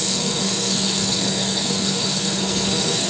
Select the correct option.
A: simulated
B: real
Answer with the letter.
A